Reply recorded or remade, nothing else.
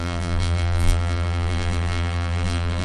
remade